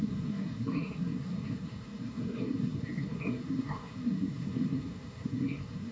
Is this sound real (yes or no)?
no